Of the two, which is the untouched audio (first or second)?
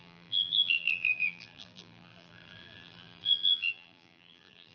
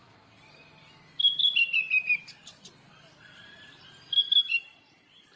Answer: second